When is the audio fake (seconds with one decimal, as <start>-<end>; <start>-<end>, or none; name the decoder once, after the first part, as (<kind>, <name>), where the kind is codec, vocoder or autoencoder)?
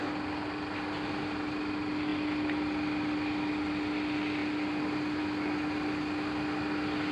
none